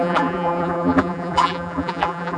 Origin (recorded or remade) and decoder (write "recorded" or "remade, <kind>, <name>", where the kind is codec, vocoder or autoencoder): remade, vocoder, BigVGAN v2